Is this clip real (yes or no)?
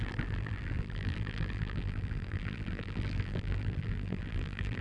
no